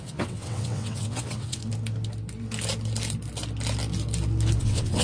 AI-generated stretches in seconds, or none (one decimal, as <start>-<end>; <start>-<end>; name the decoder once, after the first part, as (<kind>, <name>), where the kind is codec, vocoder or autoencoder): 0.0-1.6 (vocoder, WaveNeXt); 4.6-5.0